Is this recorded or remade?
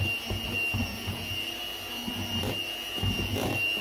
recorded